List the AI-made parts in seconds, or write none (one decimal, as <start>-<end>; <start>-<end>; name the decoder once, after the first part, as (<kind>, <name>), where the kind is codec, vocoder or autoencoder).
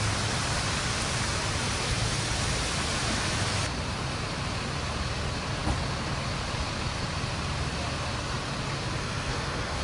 9.0-9.8 (codec, SNAC)